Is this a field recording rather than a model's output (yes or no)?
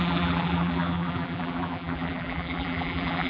no